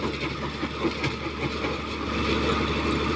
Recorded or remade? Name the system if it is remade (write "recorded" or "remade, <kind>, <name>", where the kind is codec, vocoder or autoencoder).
recorded